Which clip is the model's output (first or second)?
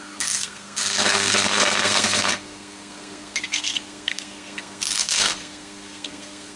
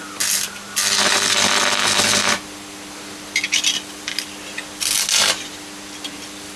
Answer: first